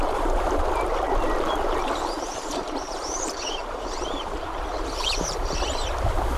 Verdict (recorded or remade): remade